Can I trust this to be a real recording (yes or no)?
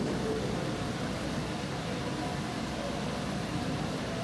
yes